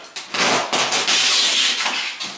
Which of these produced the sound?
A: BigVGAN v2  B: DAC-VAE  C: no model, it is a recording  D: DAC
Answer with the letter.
C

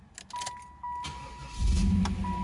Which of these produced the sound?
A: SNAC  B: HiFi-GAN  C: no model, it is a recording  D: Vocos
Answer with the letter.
C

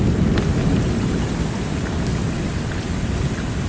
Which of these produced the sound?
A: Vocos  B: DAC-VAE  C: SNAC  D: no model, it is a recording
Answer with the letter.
D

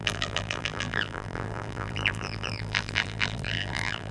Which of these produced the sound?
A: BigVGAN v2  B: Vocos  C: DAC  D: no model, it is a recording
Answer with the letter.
A